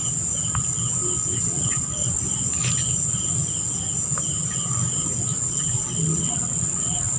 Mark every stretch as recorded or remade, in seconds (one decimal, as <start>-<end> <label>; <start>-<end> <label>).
0.0-1.4 recorded; 1.4-2.0 remade; 2.0-5.4 recorded; 5.4-7.2 remade